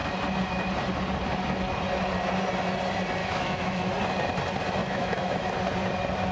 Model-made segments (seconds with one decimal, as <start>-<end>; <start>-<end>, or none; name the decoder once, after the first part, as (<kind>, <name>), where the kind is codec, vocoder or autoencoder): 3.2-3.9 (autoencoder, DAC-VAE); 4.8-5.5